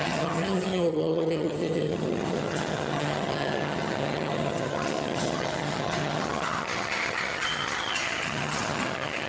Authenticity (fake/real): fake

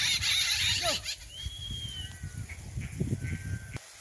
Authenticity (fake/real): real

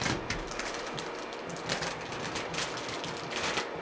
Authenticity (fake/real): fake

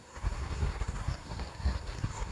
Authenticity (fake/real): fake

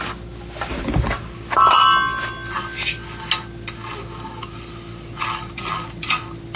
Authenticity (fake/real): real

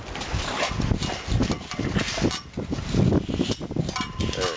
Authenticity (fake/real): real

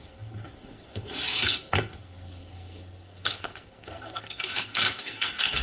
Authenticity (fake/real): fake